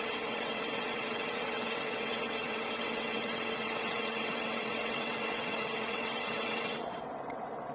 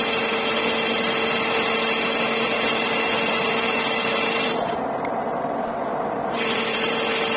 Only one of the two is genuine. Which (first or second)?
second